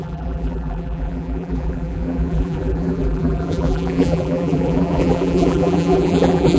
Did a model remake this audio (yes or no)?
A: yes